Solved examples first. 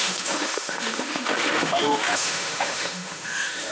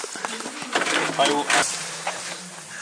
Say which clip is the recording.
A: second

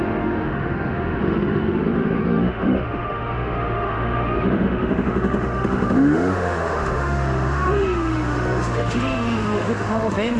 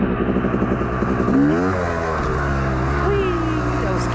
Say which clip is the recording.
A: second